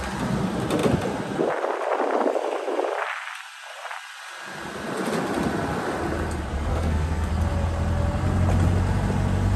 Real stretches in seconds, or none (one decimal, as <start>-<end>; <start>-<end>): 0.0-6.7; 7.3-9.6